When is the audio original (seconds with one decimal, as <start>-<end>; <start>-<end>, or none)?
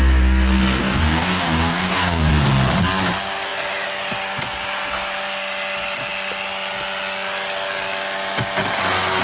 0.0-0.8; 2.3-9.2